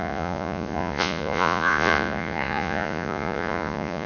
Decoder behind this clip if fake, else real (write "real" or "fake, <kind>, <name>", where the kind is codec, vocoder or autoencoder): fake, vocoder, Vocos